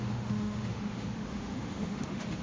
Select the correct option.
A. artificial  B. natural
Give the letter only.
A